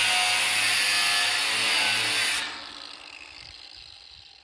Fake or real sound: real